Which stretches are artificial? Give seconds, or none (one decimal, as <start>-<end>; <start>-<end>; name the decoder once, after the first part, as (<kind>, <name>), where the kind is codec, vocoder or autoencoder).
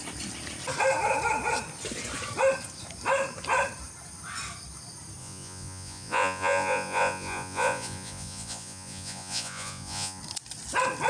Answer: 5.2-10.2 (vocoder, Vocos)